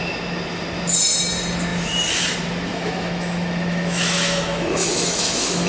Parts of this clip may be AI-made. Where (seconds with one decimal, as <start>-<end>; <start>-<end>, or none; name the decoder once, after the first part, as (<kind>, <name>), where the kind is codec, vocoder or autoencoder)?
2.7-5.7 (autoencoder, DAC-VAE)